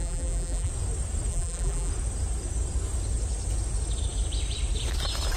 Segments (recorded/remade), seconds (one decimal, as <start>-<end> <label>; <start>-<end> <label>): 0.0-0.7 remade; 0.7-1.3 recorded; 1.3-1.9 remade; 1.9-5.4 recorded